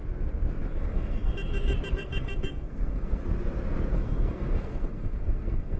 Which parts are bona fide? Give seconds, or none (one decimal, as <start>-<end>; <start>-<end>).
0.0-0.8; 1.3-1.9; 3.2-3.9